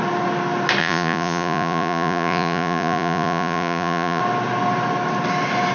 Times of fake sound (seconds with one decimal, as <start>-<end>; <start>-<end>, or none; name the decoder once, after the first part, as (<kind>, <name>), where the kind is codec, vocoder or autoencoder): 0.8-4.2 (vocoder, Vocos)